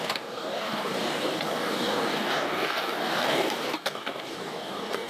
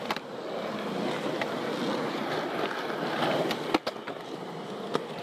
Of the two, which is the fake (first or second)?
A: first